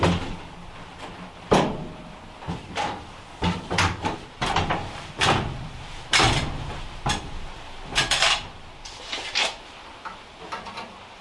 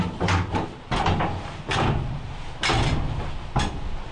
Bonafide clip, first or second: second